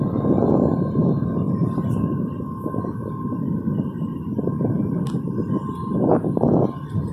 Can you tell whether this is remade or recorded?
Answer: recorded